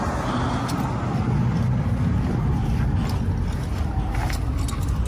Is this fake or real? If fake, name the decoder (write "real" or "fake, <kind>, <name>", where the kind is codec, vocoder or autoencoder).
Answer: real